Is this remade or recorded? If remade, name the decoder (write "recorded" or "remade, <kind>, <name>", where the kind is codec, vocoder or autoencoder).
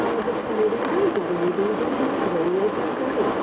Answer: recorded